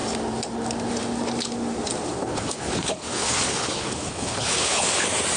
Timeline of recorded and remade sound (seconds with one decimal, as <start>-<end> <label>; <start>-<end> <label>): 0.0-2.2 recorded; 2.2-5.0 remade; 5.0-5.4 recorded